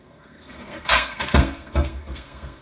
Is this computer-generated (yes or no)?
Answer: yes